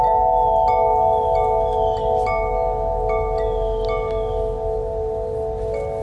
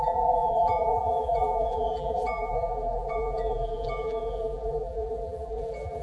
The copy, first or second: second